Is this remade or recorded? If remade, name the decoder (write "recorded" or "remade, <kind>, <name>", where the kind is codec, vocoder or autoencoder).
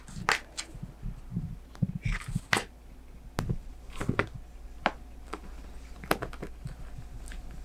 recorded